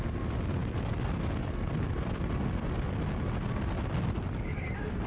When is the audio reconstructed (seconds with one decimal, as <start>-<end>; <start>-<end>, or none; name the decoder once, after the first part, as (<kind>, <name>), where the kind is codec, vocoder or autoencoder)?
none